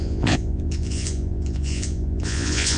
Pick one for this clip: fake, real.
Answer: fake